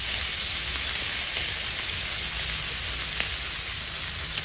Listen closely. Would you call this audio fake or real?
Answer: real